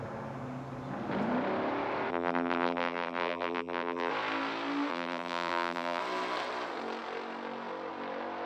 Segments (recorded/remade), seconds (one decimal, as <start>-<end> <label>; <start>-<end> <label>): 0.0-2.1 recorded; 2.1-4.1 remade; 4.1-4.9 recorded; 4.9-6.0 remade; 6.0-8.5 recorded